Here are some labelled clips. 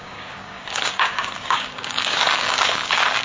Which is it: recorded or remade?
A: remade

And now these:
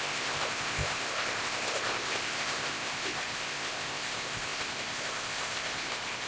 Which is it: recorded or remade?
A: remade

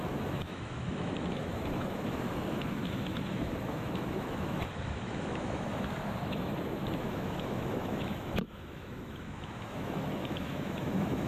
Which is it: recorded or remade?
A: remade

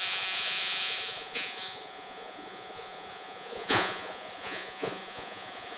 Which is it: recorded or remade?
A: remade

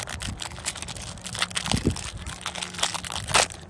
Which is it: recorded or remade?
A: recorded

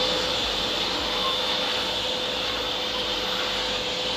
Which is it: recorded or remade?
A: recorded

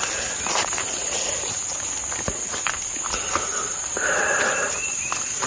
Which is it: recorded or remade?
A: recorded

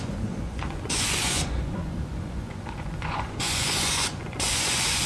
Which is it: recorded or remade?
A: remade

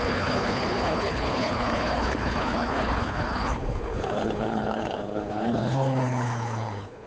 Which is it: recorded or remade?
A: remade